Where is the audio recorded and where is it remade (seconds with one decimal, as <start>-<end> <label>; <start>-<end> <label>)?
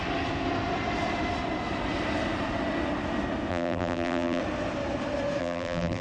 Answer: 0.0-3.5 recorded; 3.5-4.4 remade; 4.4-5.4 recorded; 5.4-6.0 remade